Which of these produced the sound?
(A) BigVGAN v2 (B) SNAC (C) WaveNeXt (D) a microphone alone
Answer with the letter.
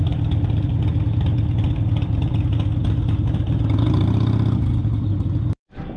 D